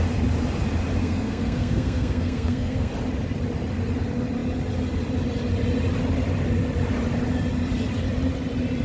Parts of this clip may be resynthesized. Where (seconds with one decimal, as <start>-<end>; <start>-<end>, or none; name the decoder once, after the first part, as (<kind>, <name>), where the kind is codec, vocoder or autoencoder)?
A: 1.0-2.9 (codec, SNAC)